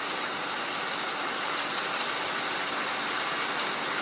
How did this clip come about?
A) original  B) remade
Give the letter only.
A